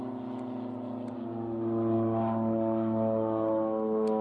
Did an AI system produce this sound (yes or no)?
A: no